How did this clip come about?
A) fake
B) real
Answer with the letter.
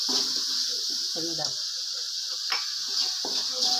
B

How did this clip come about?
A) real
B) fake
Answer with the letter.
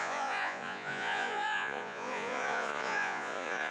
B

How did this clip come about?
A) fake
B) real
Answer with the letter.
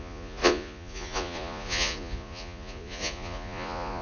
A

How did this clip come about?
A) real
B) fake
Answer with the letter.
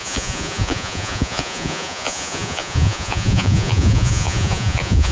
B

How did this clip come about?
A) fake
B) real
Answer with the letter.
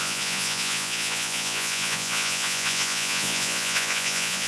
A